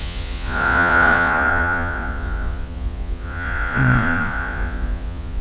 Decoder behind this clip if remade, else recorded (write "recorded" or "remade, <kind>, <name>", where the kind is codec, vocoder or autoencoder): remade, vocoder, Vocos